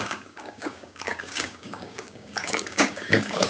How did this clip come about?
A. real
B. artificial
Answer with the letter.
B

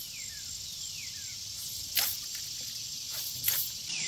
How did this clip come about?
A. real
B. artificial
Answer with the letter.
A